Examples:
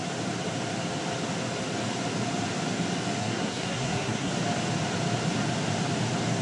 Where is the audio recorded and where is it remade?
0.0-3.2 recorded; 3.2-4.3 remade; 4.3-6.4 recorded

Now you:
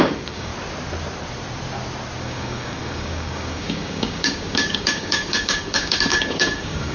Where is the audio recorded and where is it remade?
0.0-0.5 remade; 0.5-2.2 recorded; 2.2-6.9 remade

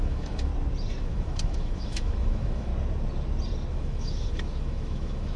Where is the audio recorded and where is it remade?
0.0-0.5 remade; 0.5-1.0 recorded; 1.0-2.7 remade; 2.7-3.7 recorded; 3.7-5.4 remade

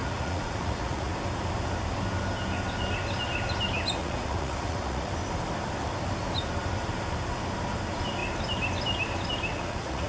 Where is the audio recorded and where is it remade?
0.0-1.1 remade; 1.1-4.0 recorded; 4.0-5.1 remade; 5.1-9.5 recorded; 9.5-10.1 remade

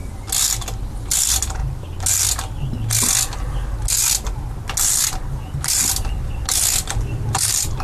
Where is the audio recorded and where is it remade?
0.0-1.0 recorded; 1.0-1.6 remade; 1.6-6.3 recorded; 6.3-7.8 remade

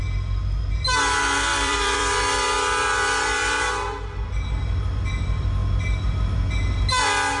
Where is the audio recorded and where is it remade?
0.0-1.5 recorded; 1.5-3.7 remade; 3.7-7.4 recorded